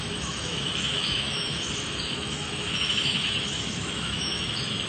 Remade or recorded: remade